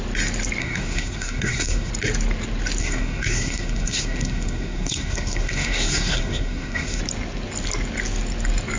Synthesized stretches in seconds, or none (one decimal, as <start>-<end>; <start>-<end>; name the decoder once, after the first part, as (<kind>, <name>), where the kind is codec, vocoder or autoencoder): 0.6-1.9 (codec, SNAC); 2.8-7.0